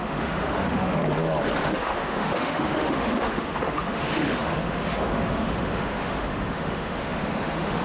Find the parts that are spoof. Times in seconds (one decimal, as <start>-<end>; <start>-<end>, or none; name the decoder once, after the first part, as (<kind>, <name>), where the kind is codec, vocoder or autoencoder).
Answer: 0.0-1.0 (autoencoder, DAC-VAE); 1.6-7.8